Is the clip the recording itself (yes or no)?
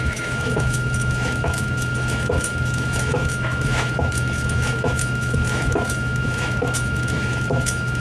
no